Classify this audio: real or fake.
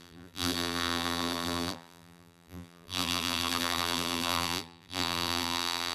fake